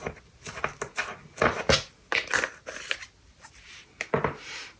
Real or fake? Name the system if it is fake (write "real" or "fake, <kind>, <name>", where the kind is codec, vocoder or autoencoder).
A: real